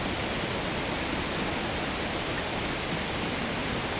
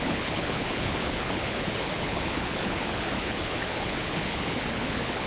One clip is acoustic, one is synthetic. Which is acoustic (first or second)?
first